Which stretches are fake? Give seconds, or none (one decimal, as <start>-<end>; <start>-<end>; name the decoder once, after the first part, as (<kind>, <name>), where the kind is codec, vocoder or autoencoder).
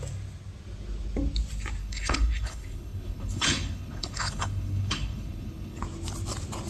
1.8-5.8 (codec, HILCodec)